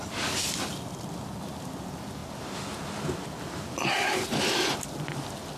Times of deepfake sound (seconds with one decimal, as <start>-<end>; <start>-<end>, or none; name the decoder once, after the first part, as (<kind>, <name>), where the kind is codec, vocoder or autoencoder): none